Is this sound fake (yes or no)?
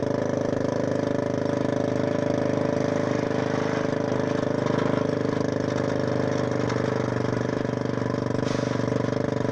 no